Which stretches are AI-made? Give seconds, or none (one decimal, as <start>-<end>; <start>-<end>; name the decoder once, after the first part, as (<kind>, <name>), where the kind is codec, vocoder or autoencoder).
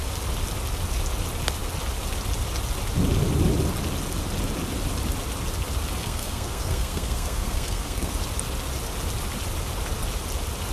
6.0-8.1 (codec, SNAC)